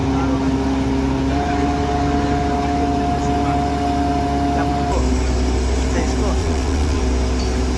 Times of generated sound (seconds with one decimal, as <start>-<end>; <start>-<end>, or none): 6.4-7.0